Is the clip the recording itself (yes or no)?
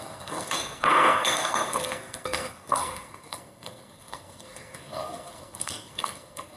no